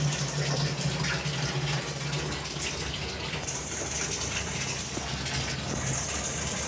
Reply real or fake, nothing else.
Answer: real